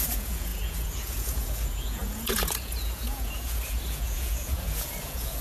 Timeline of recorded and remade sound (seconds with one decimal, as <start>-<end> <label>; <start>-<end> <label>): 0.0-5.4 remade